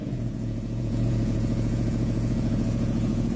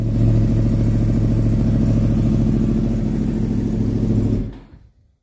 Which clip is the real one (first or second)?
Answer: second